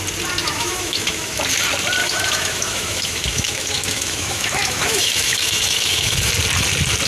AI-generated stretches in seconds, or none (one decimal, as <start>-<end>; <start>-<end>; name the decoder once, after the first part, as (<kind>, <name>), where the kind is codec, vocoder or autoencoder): 0.4-1.4 (autoencoder, DAC-VAE); 2.0-6.3